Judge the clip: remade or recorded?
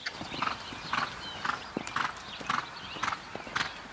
recorded